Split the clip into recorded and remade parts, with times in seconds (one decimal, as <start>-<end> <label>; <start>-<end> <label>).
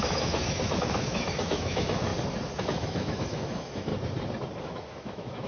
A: 0.0-2.1 remade; 2.1-2.6 recorded; 2.6-3.9 remade; 3.9-4.6 recorded; 4.6-5.5 remade